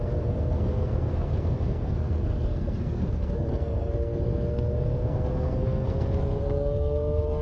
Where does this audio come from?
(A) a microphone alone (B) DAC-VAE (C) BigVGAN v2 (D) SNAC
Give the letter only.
D